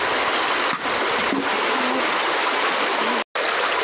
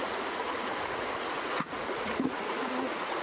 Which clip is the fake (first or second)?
second